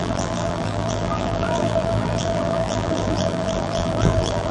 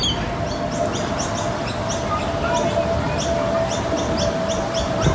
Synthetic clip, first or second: first